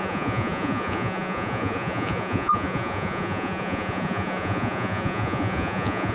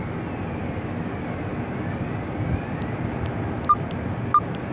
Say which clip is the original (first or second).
second